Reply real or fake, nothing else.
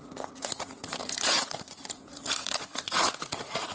fake